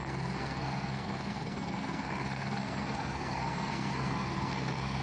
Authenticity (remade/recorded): remade